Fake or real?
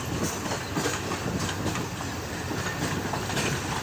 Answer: real